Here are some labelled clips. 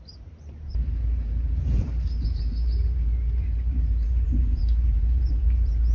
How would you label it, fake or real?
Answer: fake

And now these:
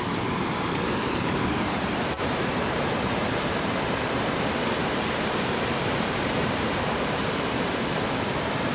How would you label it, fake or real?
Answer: fake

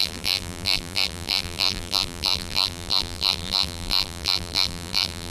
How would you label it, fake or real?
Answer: fake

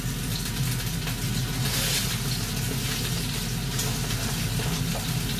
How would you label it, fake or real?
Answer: real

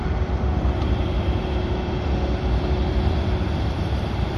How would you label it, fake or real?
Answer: fake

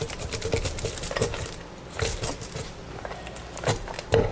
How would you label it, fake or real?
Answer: real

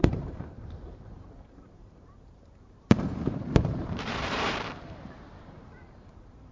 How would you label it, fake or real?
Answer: fake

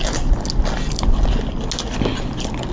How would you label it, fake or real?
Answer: real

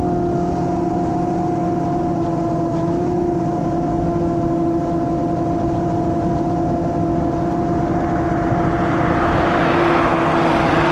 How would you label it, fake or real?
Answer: real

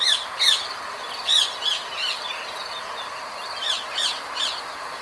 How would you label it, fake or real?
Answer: fake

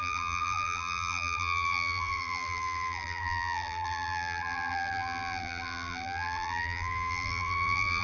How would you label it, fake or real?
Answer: fake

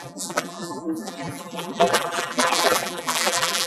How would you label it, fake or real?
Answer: fake